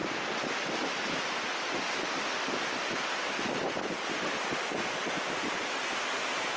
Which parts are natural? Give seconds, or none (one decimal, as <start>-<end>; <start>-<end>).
0.0-6.6